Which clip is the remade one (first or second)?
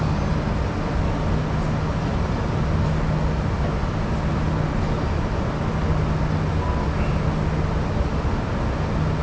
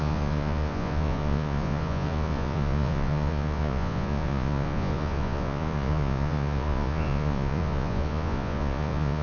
second